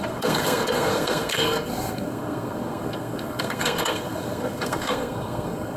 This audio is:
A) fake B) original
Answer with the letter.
A